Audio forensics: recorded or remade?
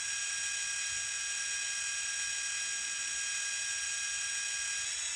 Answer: recorded